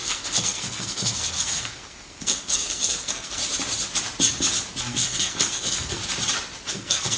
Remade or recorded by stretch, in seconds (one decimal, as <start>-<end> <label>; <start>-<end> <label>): 0.0-3.4 remade; 3.4-4.8 recorded; 4.8-6.0 remade; 6.0-6.7 recorded; 6.7-7.2 remade